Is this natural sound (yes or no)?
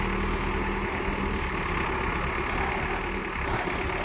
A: yes